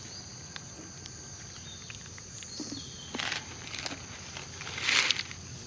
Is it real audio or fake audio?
real